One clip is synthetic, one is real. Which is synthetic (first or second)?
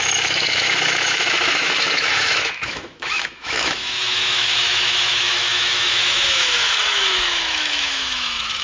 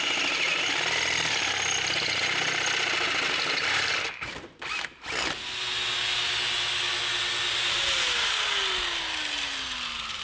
first